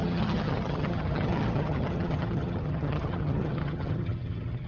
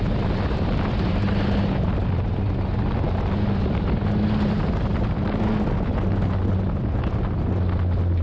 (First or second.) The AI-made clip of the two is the first